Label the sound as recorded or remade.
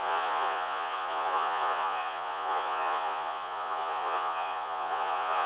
remade